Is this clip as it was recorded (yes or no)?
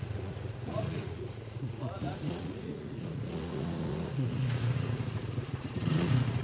no